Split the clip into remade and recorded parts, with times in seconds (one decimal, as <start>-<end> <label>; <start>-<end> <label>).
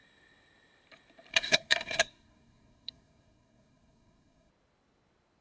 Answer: 0.0-1.3 recorded; 1.3-4.5 remade; 4.5-5.4 recorded